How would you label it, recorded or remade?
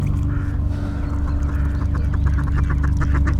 recorded